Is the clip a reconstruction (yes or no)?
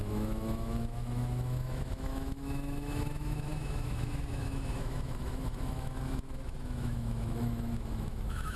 yes